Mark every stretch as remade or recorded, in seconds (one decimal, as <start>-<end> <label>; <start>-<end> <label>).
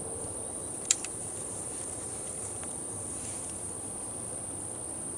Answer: 0.0-0.6 recorded; 0.6-3.7 remade; 3.7-5.2 recorded